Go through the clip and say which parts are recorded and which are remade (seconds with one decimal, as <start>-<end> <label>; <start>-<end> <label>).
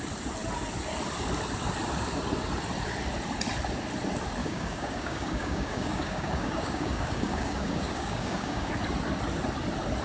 0.0-4.4 recorded; 4.4-8.7 remade; 8.7-10.0 recorded